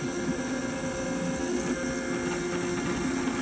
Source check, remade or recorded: recorded